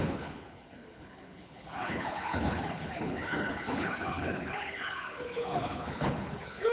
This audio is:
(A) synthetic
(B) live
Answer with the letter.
A